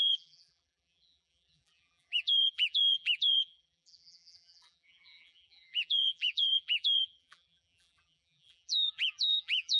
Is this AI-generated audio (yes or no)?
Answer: yes